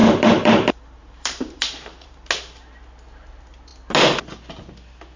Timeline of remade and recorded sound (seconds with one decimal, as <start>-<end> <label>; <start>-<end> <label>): 0.0-2.3 remade; 2.3-5.2 recorded